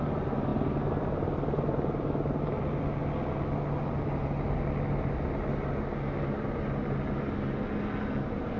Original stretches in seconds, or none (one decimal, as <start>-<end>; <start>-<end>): 0.0-8.6